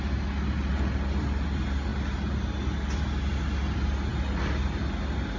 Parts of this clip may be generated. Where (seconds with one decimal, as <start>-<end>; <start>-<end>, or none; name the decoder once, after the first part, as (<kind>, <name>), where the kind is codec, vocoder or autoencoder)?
none